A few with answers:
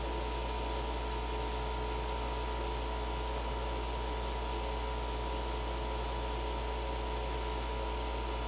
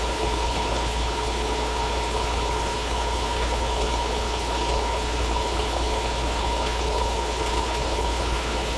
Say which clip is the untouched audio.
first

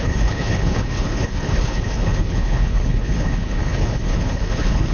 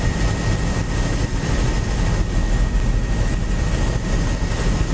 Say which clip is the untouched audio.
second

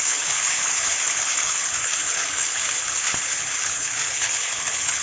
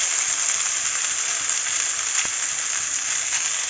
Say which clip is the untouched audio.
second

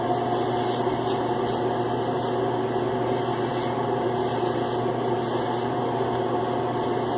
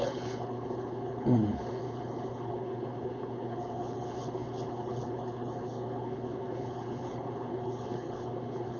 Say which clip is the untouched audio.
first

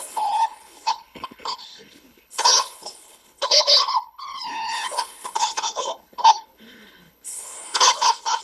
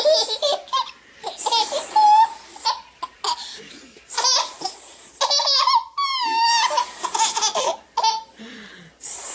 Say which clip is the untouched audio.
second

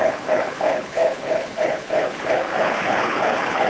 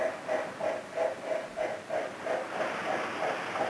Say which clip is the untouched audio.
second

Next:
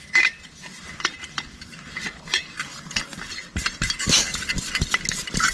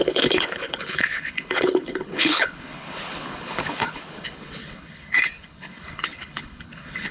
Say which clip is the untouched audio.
first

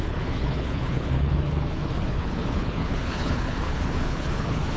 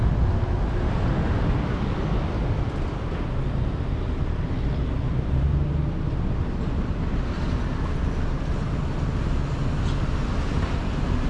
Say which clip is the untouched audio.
second